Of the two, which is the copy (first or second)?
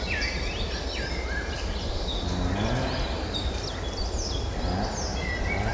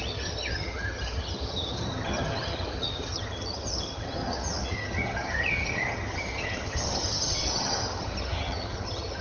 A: second